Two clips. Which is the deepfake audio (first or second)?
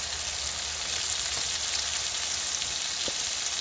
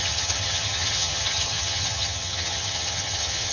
second